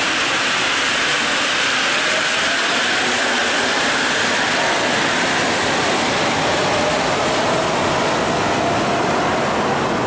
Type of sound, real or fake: fake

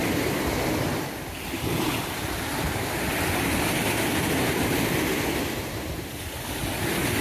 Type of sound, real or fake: real